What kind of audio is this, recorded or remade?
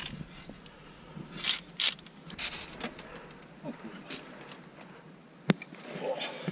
recorded